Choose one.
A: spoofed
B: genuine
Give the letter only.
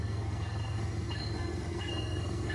A